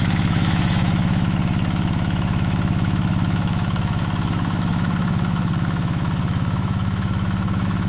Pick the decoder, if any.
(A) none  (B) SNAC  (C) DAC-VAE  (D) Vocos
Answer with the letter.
C